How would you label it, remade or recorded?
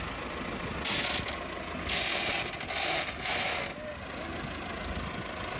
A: recorded